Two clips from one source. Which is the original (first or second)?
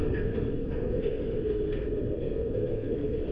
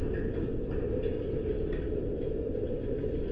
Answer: second